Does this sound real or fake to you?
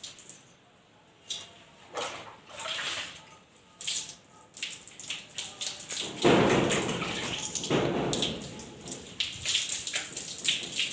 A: real